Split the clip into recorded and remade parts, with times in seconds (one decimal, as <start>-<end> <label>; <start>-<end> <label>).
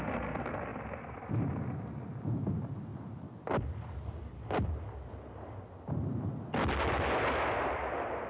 0.0-8.3 recorded